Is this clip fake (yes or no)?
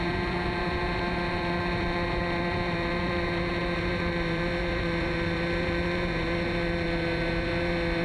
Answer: yes